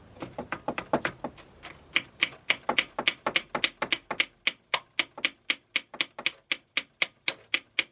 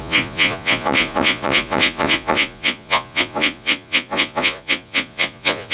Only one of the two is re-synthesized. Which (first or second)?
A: second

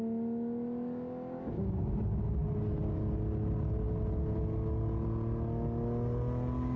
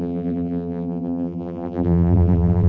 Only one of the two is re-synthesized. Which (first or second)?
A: second